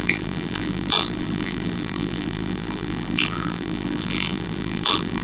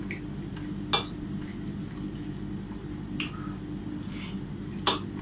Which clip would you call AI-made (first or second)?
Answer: first